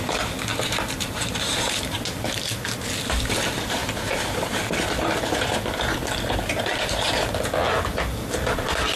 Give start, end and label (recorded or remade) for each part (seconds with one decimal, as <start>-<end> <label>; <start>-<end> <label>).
0.0-0.5 recorded; 0.5-2.5 remade; 2.5-3.8 recorded; 3.8-4.6 remade; 4.6-6.7 recorded; 6.7-7.3 remade; 7.3-9.0 recorded